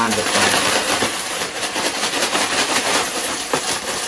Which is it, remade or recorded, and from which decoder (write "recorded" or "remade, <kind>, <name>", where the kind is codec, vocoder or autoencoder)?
remade, vocoder, BigVGAN v2